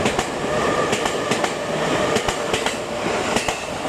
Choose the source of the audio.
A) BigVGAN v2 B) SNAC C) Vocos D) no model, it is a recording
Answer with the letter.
D